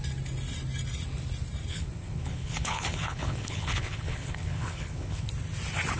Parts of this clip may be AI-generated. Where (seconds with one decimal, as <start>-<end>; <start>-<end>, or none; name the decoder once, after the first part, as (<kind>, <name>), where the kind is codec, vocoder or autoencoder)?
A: 1.7-5.3 (codec, HILCodec)